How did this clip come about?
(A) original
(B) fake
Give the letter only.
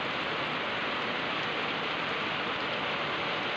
B